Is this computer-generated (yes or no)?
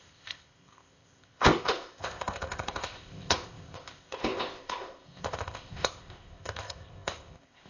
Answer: yes